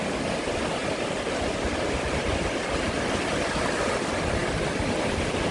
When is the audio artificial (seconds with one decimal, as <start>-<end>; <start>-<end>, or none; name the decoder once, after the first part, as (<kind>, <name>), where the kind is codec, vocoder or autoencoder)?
none